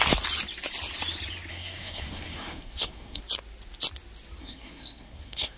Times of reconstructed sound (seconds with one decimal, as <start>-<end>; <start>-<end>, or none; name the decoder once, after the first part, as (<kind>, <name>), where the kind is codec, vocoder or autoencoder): 1.5-3.2 (codec, SNAC); 4.4-5.6